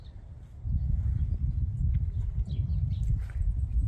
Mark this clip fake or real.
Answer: real